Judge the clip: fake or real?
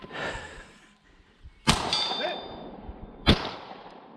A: fake